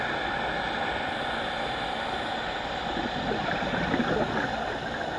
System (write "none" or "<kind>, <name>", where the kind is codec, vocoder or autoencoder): none